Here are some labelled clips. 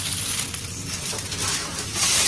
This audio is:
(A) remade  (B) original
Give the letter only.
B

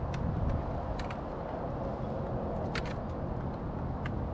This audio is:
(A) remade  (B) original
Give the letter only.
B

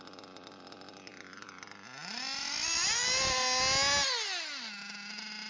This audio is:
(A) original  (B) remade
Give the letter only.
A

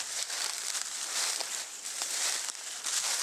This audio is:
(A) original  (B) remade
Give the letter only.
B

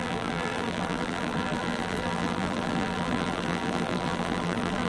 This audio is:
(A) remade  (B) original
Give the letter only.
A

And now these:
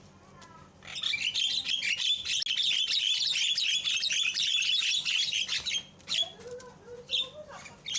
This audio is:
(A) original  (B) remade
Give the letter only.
A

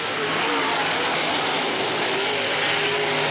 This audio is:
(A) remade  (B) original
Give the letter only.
B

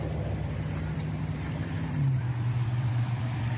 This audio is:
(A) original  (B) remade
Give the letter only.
B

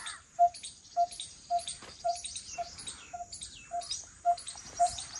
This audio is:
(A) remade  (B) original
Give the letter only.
A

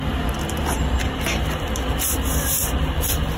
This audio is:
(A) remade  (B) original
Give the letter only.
B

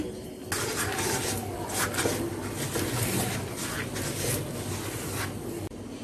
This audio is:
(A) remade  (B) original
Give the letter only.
B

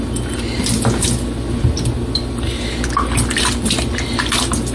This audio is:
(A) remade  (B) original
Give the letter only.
B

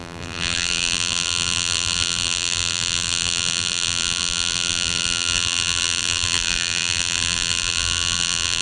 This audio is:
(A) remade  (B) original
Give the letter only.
A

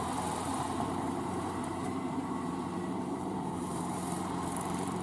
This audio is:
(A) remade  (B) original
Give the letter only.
A